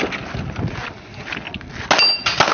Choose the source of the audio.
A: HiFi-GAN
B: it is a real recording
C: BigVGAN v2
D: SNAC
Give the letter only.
B